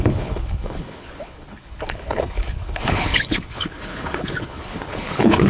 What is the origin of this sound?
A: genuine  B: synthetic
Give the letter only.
B